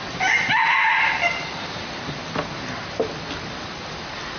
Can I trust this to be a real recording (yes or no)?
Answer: yes